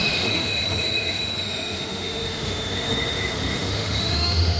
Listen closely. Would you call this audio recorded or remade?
remade